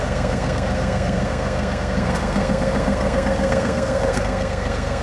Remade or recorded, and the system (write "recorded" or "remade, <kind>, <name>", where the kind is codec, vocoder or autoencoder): remade, codec, SNAC